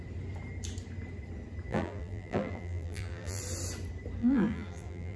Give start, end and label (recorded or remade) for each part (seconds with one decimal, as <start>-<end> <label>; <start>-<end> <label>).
0.0-1.7 recorded; 1.7-3.4 remade; 3.4-4.2 recorded; 4.2-5.2 remade